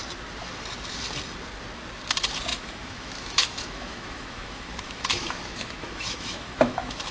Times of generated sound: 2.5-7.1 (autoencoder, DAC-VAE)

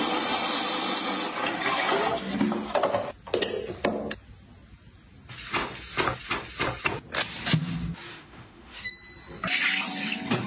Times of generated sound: 8.1-8.9 (autoencoder, DAC-VAE)

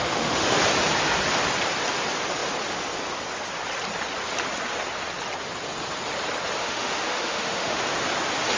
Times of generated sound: 0.0-0.6 (autoencoder, DAC-VAE); 6.6-7.8

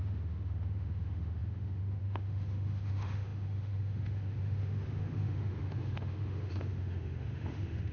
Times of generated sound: 0.0-7.9 (autoencoder, DAC-VAE)

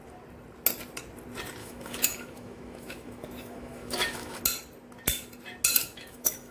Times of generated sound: 1.6-4.4 (autoencoder, DAC-VAE); 5.8-6.5

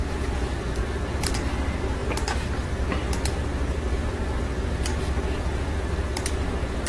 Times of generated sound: none